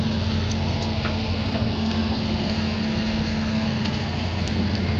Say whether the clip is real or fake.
fake